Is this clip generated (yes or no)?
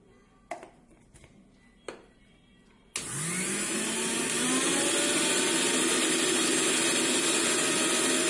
no